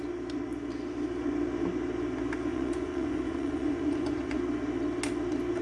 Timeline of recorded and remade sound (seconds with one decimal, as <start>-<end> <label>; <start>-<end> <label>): 0.0-2.5 recorded; 2.5-4.4 remade; 4.4-5.6 recorded